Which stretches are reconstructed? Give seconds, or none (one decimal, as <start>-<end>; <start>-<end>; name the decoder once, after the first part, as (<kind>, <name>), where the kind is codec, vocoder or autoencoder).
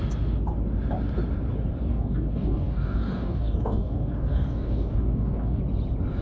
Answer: 1.9-5.6 (codec, DAC)